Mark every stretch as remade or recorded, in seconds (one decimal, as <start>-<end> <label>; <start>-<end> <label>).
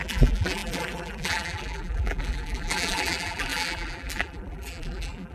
0.0-5.3 remade